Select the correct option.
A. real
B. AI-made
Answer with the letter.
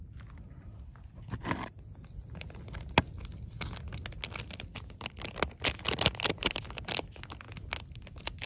A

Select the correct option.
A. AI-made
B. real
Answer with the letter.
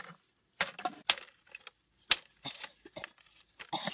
B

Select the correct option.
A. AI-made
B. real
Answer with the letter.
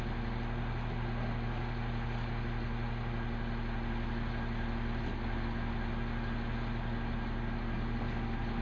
B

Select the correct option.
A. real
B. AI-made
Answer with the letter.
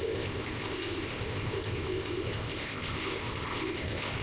B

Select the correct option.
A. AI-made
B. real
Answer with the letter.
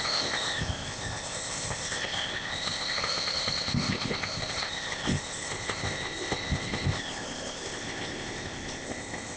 A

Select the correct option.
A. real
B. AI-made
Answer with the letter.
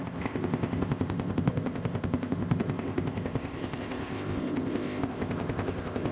B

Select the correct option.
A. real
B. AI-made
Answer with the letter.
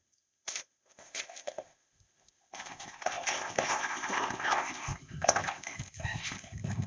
B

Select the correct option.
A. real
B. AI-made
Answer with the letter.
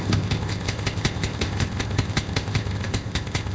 B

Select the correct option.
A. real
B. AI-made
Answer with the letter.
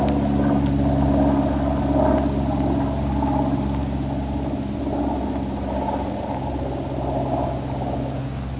A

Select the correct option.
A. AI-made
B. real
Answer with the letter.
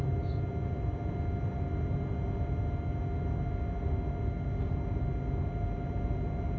B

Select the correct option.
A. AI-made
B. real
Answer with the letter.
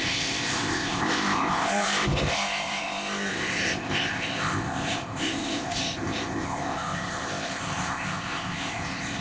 A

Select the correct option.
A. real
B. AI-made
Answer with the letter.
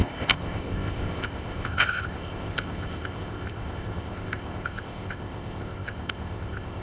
B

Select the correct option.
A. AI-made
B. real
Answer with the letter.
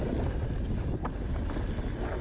B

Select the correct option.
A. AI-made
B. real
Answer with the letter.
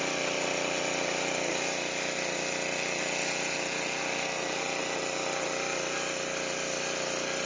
B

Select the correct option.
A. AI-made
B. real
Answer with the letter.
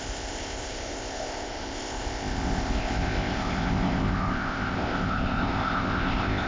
A